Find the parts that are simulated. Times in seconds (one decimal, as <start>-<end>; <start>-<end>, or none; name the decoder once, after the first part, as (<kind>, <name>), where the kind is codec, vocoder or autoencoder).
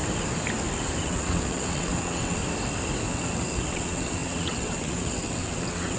1.0-2.4 (vocoder, WaveNeXt); 3.1-6.0